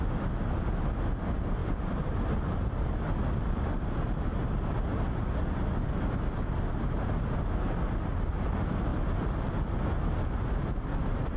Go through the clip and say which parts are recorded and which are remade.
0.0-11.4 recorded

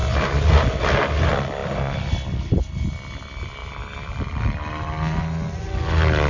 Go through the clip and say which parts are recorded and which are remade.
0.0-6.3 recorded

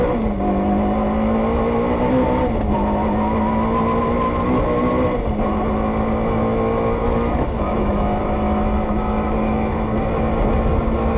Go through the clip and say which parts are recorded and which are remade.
0.0-7.0 recorded; 7.0-10.1 remade; 10.1-11.2 recorded

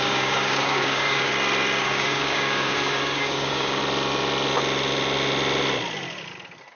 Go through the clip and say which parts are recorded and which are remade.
0.0-1.3 remade; 1.3-1.8 recorded; 1.8-3.8 remade; 3.8-6.7 recorded

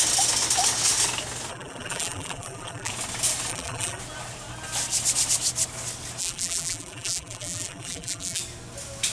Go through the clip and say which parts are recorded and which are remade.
0.0-1.5 recorded; 1.5-2.9 remade; 2.9-3.5 recorded; 3.5-4.0 remade; 4.0-6.2 recorded; 6.2-8.4 remade; 8.4-9.1 recorded